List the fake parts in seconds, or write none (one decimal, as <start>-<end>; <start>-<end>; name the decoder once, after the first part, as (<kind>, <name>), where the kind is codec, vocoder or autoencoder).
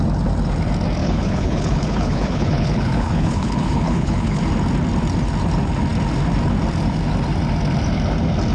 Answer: 1.0-4.4 (codec, HILCodec)